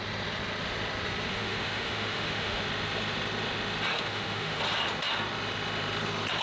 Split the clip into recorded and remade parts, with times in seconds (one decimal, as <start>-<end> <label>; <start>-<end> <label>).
0.0-1.3 recorded; 1.3-2.6 remade; 2.6-3.9 recorded; 3.9-4.6 remade; 4.6-6.4 recorded